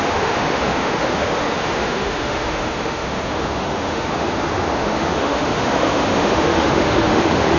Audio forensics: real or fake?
fake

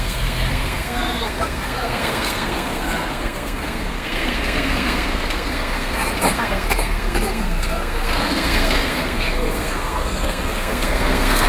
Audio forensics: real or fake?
fake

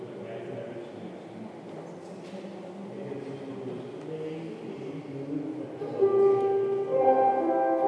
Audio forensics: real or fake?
real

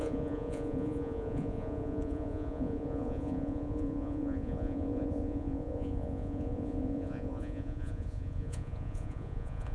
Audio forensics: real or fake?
fake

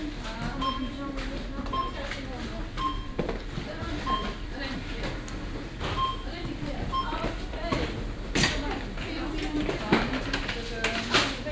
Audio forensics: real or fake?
real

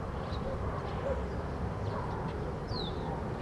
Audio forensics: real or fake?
real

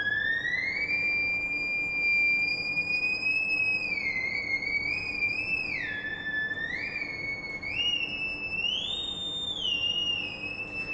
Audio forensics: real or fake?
real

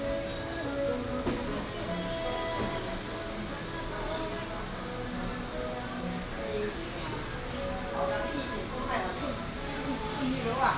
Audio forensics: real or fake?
real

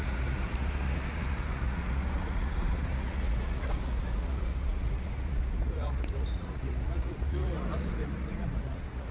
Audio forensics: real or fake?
fake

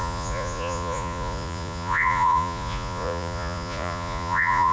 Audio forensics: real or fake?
fake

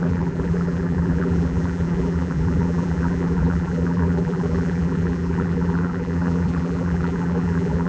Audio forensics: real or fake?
fake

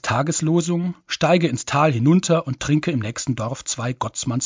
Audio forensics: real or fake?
real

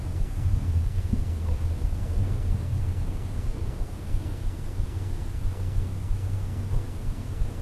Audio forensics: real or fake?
fake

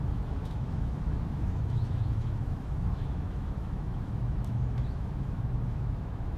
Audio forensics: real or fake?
fake